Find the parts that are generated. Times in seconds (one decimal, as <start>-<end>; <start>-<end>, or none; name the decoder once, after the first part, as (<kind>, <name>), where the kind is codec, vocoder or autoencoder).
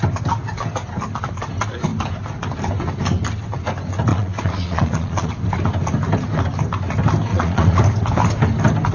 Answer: 4.1-5.3 (vocoder, Vocos); 7.3-7.8